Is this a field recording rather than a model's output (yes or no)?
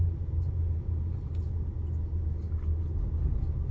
yes